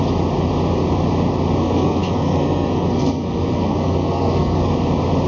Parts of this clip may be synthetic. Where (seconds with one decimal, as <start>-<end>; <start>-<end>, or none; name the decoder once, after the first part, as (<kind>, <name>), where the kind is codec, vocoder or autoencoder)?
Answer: 1.6-4.7 (codec, SNAC)